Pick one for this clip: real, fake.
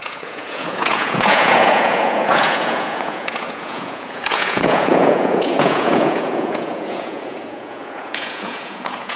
fake